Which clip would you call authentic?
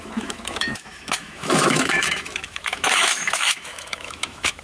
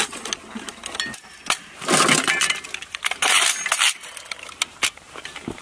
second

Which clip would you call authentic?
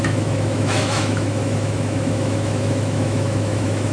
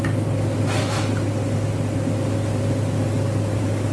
second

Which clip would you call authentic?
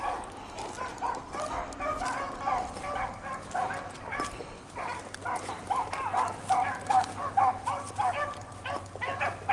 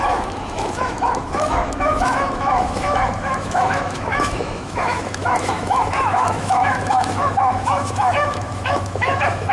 first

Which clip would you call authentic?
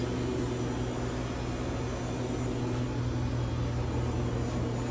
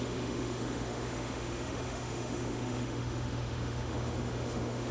first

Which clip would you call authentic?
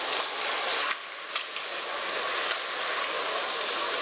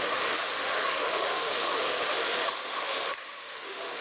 first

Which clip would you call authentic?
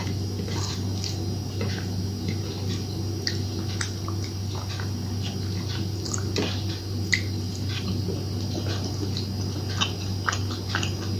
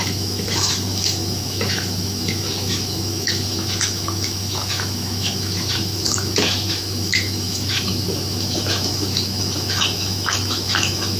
first